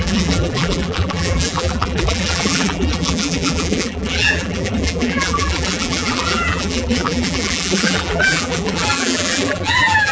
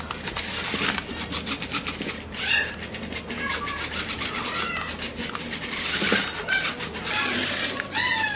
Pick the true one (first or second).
second